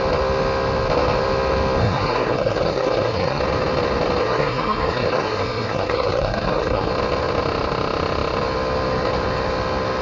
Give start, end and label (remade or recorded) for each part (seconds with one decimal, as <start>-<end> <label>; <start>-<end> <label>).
0.0-1.8 recorded; 1.8-3.4 remade; 3.4-4.2 recorded; 4.2-6.9 remade; 6.9-10.0 recorded